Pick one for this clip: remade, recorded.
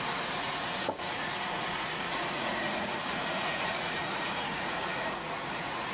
remade